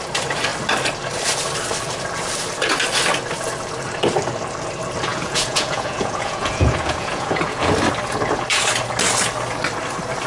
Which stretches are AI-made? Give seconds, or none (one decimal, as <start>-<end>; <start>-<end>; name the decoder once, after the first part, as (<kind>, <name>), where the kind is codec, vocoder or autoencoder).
5.1-7.7 (vocoder, Vocos)